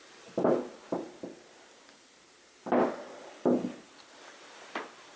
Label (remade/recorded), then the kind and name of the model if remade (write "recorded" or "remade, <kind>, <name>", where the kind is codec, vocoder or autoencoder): recorded